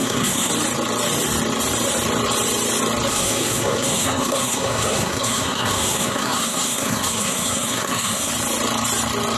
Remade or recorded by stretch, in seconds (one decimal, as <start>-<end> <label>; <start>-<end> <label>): 0.0-0.5 remade; 0.5-3.1 recorded; 3.1-8.3 remade; 8.3-9.4 recorded